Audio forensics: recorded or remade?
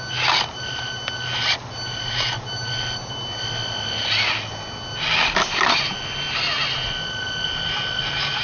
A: recorded